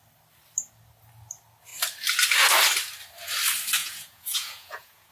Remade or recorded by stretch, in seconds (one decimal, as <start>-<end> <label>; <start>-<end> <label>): 0.0-3.8 recorded; 3.8-5.1 remade